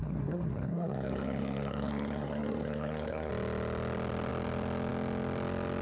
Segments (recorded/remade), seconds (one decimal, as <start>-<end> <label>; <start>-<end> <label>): 0.0-3.3 remade; 3.3-5.8 recorded